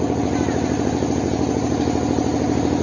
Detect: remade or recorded recorded